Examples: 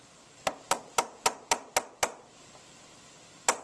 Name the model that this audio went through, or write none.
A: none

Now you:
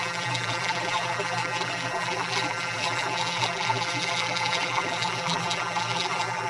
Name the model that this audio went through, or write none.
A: vocoder, BigVGAN v2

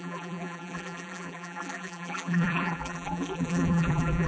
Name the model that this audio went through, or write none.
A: vocoder, BigVGAN v2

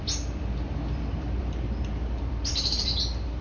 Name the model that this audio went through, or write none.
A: vocoder, BigVGAN v2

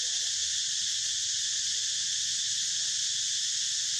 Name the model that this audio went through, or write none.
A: none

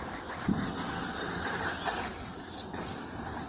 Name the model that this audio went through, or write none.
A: none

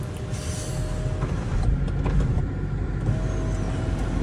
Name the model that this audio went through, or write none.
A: none